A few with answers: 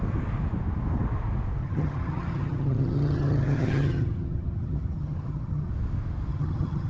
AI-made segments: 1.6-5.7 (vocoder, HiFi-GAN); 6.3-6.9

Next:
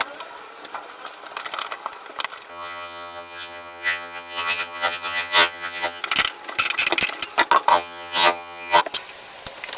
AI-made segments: 2.5-6.0 (vocoder, HiFi-GAN); 7.7-8.8

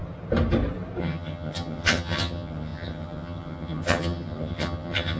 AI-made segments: 1.0-5.2 (vocoder, HiFi-GAN)

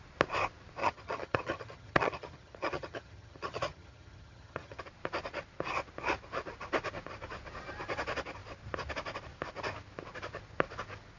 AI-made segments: 0.8-4.8 (vocoder, HiFi-GAN)